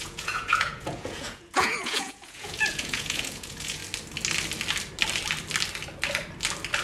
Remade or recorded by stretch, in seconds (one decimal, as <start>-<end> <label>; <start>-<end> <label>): 0.0-3.8 remade; 3.8-6.8 recorded